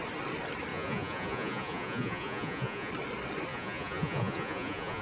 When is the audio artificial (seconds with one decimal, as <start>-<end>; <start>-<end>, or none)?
0.7-2.9; 3.5-5.0